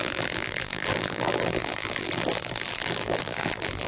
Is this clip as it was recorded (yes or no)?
no